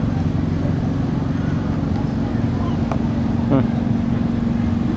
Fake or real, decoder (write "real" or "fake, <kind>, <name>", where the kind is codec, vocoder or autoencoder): real